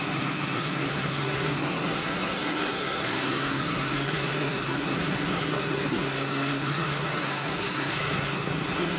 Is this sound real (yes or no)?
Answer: no